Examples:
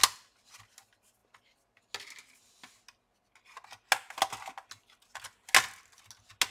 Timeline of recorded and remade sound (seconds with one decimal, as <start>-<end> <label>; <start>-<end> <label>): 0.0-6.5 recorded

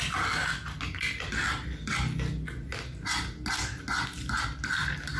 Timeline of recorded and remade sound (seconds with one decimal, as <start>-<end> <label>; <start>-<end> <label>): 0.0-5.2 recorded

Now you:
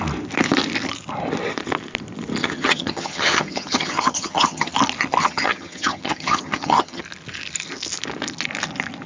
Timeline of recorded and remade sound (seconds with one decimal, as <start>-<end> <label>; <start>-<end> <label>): 0.0-2.4 recorded; 2.4-4.7 remade; 4.7-5.2 recorded; 5.2-7.0 remade; 7.0-9.1 recorded